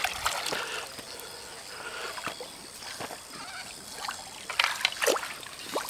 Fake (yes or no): no